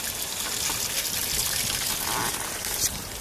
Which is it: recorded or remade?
recorded